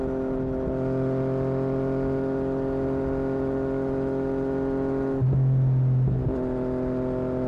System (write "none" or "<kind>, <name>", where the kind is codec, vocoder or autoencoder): none